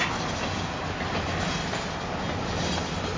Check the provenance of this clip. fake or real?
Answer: real